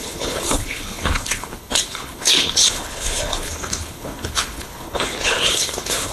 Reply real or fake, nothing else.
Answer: fake